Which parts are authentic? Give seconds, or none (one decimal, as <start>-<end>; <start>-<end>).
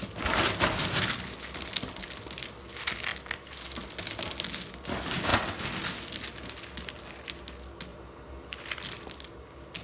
0.0-9.8